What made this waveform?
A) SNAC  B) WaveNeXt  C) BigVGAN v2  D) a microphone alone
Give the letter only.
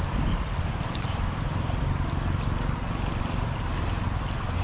D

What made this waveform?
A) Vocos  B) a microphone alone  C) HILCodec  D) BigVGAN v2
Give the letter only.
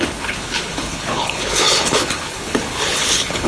C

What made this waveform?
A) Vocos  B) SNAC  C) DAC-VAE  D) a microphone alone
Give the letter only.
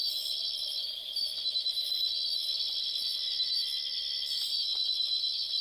D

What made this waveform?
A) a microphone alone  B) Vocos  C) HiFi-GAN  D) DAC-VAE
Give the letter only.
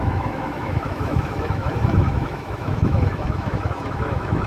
D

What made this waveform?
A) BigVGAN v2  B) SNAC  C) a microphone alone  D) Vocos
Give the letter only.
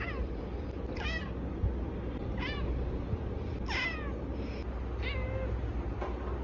C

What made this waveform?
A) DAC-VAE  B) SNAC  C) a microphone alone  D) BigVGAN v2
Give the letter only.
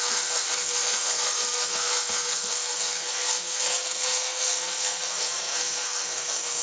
B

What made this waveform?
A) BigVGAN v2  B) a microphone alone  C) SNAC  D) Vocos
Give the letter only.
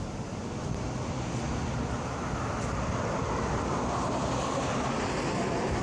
B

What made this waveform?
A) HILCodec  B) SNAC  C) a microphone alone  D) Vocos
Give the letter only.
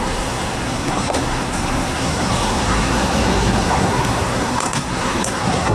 B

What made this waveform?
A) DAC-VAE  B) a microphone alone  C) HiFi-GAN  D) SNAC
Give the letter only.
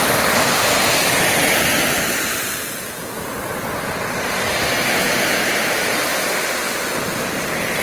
B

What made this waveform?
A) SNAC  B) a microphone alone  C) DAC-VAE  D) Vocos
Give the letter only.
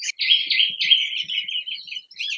B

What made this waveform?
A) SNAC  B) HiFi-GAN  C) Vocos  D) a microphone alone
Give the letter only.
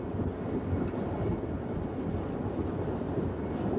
D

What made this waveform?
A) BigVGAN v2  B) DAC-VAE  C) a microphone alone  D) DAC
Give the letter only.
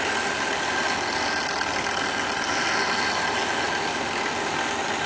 C